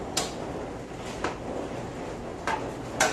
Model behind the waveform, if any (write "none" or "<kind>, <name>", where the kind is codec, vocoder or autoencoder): none